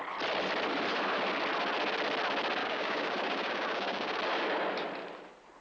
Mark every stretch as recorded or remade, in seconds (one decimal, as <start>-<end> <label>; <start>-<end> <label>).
0.0-2.6 recorded; 2.6-4.2 remade; 4.2-5.6 recorded